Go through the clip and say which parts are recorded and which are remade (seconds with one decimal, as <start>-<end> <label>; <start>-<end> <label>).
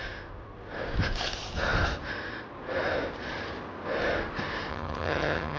0.0-4.7 recorded; 4.7-5.6 remade